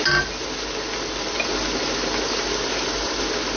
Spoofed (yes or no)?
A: no